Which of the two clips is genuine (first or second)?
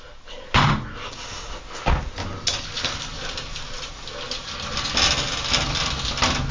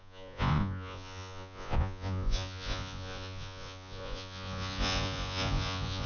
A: first